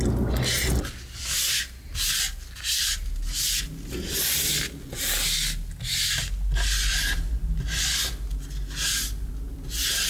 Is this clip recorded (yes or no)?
yes